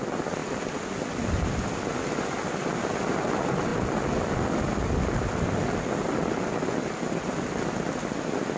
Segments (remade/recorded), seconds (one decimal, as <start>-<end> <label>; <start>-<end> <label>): 0.0-8.6 recorded